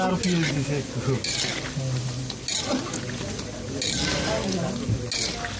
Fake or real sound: real